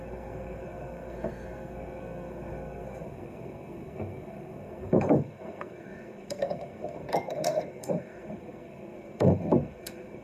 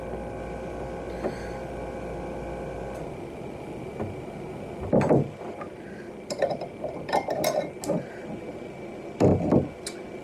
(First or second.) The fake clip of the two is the first